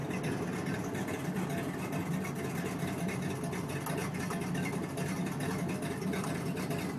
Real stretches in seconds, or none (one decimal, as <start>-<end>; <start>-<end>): 0.0-7.0